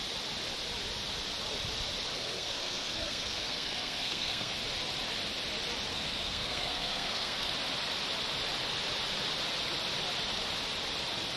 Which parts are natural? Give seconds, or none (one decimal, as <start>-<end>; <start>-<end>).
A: 0.0-2.1; 4.5-5.9; 7.5-11.4